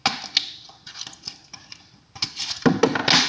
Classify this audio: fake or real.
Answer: real